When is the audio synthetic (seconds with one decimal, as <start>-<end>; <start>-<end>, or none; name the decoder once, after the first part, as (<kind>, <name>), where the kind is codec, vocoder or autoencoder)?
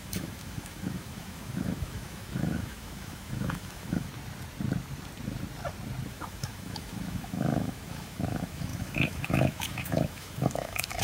0.0-4.1 (autoencoder, DAC-VAE); 6.1-11.0